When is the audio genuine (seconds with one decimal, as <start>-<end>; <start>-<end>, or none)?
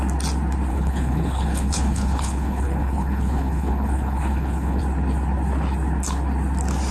0.0-0.7; 4.8-6.9